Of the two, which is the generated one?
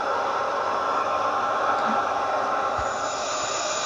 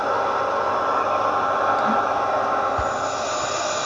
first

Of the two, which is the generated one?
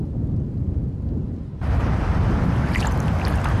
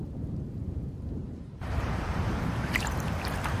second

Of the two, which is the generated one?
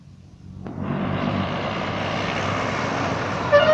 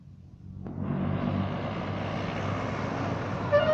first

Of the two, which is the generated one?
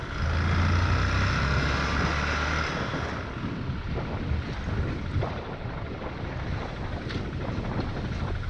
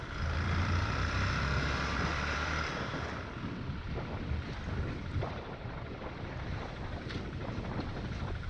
second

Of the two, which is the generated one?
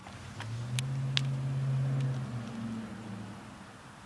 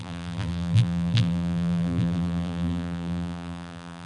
second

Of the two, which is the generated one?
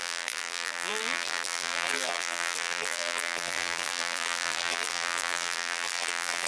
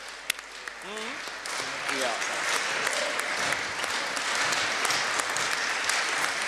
first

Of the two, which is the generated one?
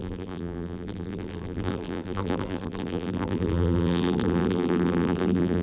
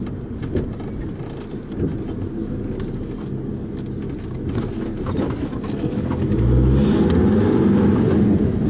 first